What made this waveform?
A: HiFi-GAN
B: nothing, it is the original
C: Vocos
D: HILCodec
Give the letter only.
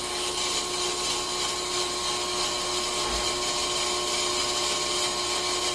B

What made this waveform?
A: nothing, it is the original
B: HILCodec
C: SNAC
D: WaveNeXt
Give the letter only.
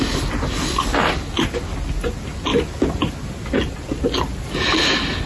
A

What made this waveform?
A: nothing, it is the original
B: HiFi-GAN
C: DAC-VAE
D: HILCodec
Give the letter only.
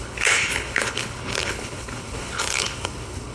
D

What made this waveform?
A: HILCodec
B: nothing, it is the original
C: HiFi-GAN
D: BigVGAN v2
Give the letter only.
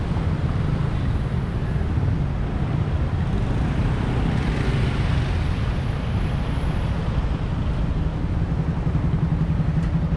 B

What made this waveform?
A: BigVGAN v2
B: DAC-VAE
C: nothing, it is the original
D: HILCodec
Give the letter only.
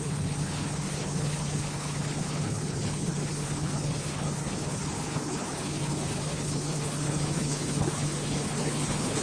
D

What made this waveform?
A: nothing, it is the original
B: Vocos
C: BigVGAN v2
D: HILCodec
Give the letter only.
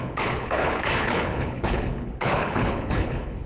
D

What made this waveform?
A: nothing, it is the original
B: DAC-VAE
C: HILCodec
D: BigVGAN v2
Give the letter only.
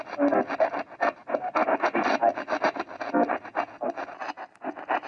A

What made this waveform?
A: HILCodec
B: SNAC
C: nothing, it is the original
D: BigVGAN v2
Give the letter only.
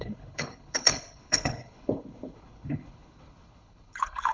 A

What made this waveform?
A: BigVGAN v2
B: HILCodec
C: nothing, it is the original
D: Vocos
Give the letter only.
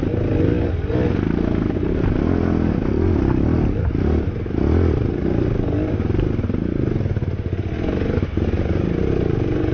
C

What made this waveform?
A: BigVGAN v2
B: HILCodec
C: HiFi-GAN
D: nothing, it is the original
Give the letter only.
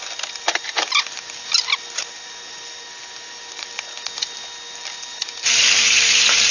D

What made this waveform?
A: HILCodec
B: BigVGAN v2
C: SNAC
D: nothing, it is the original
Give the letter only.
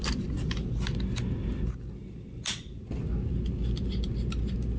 D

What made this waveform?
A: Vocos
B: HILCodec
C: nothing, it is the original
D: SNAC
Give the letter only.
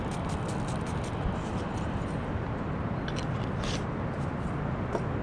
C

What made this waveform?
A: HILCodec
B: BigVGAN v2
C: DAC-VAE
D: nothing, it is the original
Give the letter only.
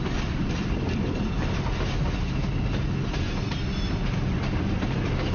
D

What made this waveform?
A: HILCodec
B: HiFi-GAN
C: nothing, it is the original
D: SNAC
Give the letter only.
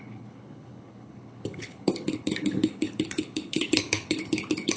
A